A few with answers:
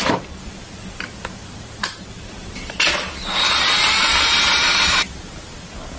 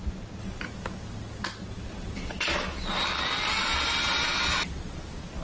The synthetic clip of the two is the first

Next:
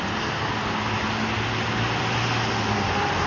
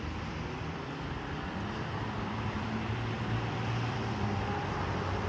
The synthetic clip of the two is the second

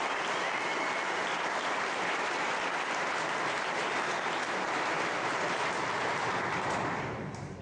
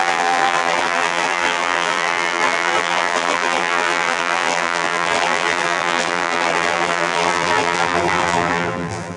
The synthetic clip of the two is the second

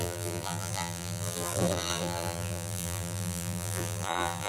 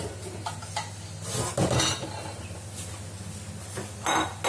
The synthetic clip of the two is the first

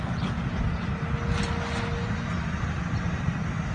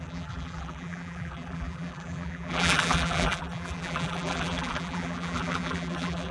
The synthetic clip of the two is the second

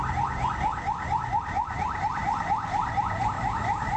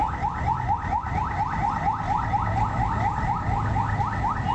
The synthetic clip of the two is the first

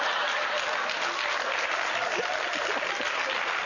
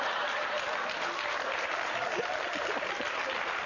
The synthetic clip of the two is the second